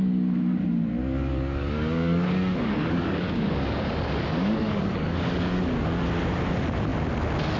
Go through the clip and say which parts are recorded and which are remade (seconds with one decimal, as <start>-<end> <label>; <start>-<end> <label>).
0.0-1.0 recorded; 1.0-5.6 remade; 5.6-7.6 recorded